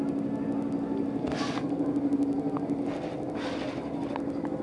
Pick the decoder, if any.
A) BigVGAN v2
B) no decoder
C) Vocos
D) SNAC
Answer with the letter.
B